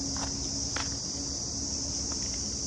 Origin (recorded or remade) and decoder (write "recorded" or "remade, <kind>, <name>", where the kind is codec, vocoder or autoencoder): recorded